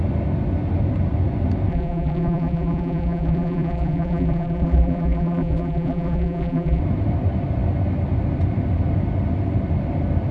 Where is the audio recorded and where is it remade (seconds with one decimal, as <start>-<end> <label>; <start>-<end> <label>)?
0.0-1.7 recorded; 1.7-6.8 remade; 6.8-10.3 recorded